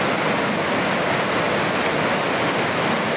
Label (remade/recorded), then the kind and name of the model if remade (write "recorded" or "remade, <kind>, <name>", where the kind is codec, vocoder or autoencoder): recorded